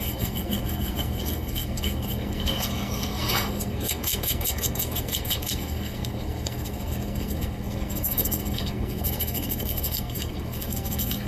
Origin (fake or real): fake